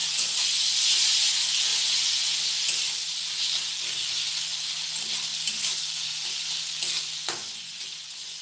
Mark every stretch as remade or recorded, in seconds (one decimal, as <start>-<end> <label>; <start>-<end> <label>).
0.0-0.7 remade; 0.7-1.7 recorded; 1.7-2.3 remade; 2.3-7.4 recorded; 7.4-8.4 remade

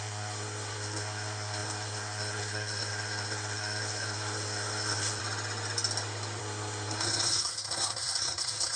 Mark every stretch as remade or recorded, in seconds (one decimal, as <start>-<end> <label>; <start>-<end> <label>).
0.0-5.2 remade; 5.2-6.4 recorded; 6.4-8.8 remade

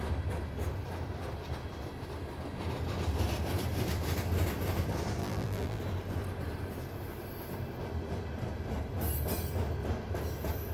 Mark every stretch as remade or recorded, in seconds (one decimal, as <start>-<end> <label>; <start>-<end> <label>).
0.0-5.2 recorded; 5.2-5.8 remade; 5.8-10.7 recorded

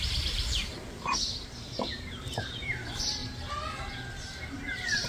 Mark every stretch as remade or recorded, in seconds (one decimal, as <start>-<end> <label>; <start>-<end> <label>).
0.0-3.2 remade; 3.2-4.5 recorded; 4.5-5.1 remade

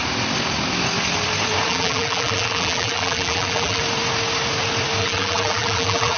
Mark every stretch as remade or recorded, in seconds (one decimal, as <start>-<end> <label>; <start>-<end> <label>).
0.0-1.7 recorded; 1.7-3.8 remade; 3.8-5.0 recorded; 5.0-6.2 remade

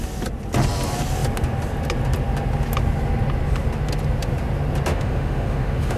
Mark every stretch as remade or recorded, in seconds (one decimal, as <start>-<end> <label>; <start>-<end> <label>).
0.0-4.9 recorded; 4.9-6.0 remade